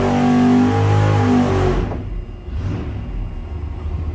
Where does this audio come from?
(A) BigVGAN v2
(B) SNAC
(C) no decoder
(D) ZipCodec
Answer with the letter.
C